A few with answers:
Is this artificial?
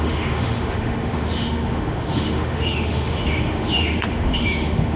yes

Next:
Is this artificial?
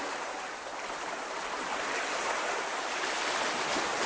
no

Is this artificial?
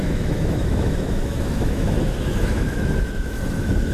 yes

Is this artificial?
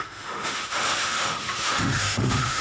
yes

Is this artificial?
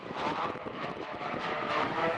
yes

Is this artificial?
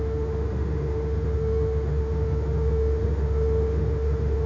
yes